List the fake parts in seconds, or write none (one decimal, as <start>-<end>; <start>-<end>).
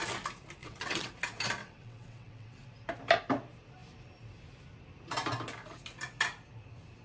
0.6-1.1; 1.6-2.7